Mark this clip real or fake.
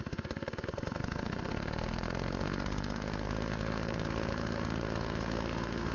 fake